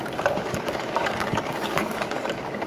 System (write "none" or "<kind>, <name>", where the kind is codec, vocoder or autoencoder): codec, DAC